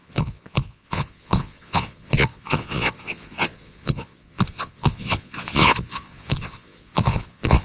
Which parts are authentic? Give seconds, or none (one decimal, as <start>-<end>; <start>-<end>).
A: none

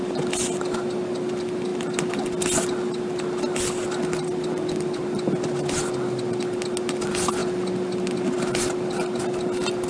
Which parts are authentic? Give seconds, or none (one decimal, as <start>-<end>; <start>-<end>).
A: 0.0-9.9

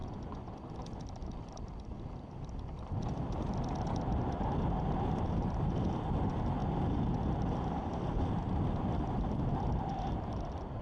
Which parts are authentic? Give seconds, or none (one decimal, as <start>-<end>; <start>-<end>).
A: 0.6-10.8

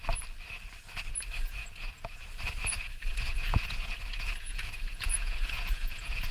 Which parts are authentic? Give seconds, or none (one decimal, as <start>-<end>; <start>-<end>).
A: 0.0-1.6; 2.2-3.1

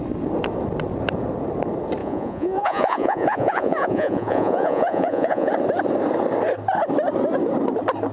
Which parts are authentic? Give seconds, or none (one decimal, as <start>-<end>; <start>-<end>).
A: 0.0-2.0; 5.5-8.1

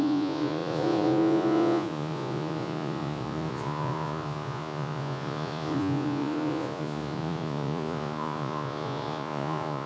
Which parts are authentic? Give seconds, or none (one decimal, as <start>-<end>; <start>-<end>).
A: none